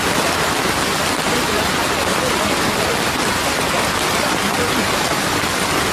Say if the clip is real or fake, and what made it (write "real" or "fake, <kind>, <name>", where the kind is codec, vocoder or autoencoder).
real